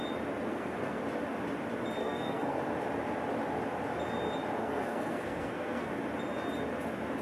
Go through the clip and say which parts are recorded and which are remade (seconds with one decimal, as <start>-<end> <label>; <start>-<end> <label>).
0.0-0.5 recorded; 0.5-1.0 remade; 1.0-2.0 recorded; 2.0-2.6 remade; 2.6-4.6 recorded; 4.6-5.9 remade; 5.9-7.2 recorded